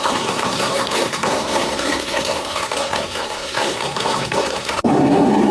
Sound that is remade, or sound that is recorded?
remade